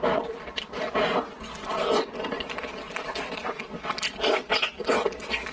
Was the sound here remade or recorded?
recorded